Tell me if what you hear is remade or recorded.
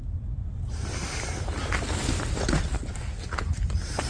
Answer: recorded